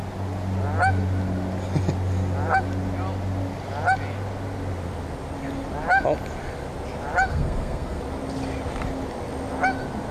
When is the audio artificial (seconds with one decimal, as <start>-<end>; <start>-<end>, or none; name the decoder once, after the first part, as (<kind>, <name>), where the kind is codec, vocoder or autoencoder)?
7.3-8.0 (codec, SNAC)